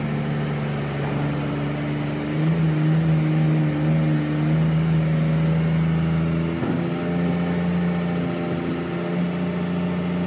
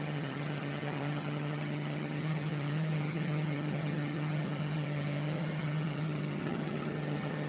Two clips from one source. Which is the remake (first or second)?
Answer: second